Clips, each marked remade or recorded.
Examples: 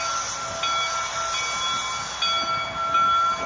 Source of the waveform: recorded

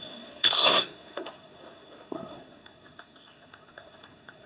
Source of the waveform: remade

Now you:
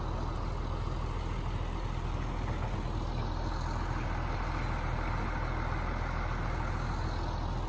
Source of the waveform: recorded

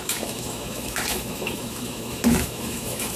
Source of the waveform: remade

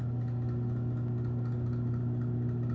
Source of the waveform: recorded